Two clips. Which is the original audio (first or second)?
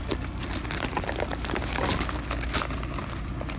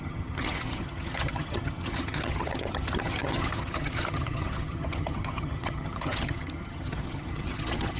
first